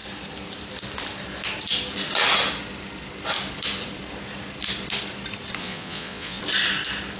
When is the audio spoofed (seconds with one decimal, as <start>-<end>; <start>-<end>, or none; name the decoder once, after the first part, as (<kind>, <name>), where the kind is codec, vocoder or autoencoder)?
5.6-6.4 (vocoder, Vocos)